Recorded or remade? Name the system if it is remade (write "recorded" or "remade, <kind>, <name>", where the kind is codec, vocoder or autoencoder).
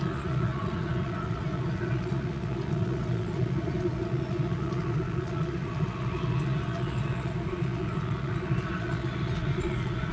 remade, vocoder, Vocos